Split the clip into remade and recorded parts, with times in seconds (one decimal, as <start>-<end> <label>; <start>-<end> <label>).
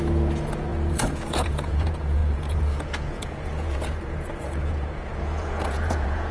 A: 0.0-6.3 remade